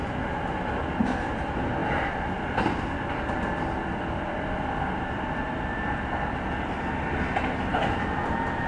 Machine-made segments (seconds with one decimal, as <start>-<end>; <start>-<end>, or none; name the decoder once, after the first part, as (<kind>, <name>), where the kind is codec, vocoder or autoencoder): 1.8-5.8 (vocoder, BigVGAN v2)